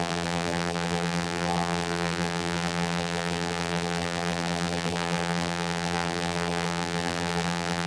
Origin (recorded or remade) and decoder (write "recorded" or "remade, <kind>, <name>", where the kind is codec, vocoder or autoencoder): remade, vocoder, BigVGAN v2